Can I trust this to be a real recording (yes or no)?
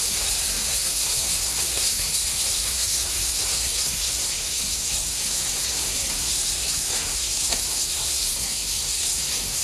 no